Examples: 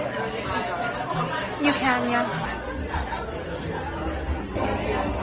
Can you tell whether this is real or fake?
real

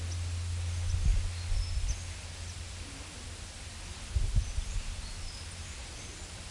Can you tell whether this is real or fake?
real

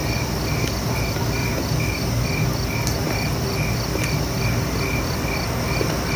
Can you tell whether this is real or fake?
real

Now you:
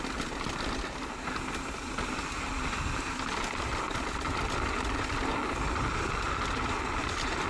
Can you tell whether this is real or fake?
real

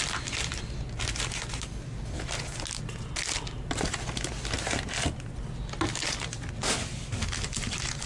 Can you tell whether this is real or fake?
real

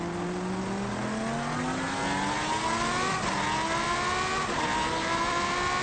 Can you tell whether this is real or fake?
real